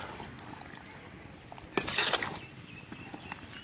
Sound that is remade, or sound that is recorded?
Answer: recorded